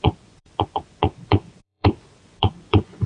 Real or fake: fake